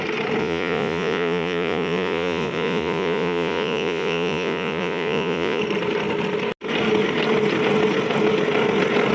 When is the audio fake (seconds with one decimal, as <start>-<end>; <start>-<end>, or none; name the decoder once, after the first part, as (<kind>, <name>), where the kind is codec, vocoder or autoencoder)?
0.4-5.6 (vocoder, Vocos)